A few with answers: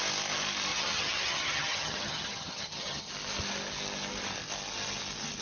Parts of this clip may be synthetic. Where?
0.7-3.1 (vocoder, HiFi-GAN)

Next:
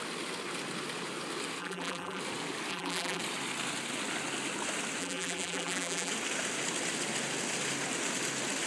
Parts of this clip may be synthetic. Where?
1.6-2.2 (vocoder, BigVGAN v2); 2.7-3.2; 5.0-6.1

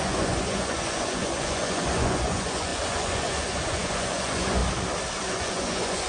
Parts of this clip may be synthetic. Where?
0.0-4.6 (vocoder, Vocos); 5.3-6.1

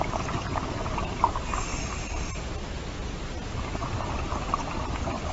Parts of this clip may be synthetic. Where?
none